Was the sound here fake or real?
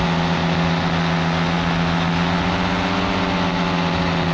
real